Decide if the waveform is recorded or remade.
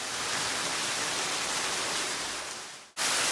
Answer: recorded